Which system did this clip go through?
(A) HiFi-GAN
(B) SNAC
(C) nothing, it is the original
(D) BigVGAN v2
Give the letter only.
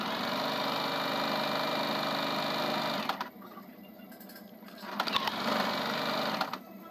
C